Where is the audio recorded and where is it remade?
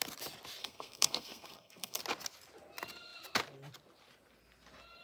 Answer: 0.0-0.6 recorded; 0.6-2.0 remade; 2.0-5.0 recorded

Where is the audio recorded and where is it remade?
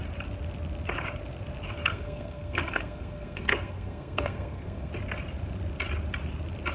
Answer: 0.0-1.8 recorded; 1.8-4.9 remade; 4.9-6.7 recorded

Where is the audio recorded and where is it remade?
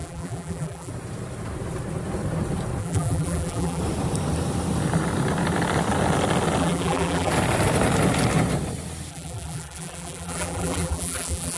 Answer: 0.0-0.9 remade; 0.9-2.8 recorded; 2.8-3.8 remade; 3.8-6.6 recorded; 6.6-7.3 remade; 7.3-9.1 recorded; 9.1-11.6 remade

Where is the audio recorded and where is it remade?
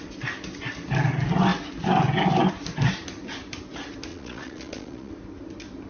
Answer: 0.0-4.1 recorded; 4.1-5.1 remade; 5.1-5.9 recorded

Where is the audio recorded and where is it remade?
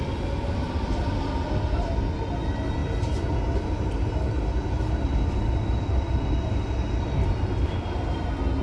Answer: 0.0-8.6 recorded